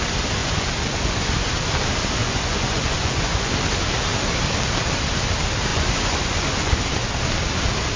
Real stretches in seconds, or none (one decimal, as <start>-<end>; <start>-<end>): 0.0-0.4; 1.5-2.2; 3.5-5.7; 6.7-8.0